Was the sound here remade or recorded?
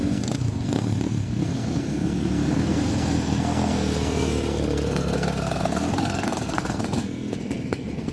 remade